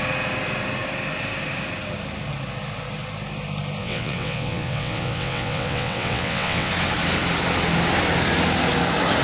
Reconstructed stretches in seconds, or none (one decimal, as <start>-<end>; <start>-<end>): 3.8-6.7